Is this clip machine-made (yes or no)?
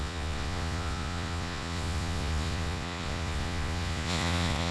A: yes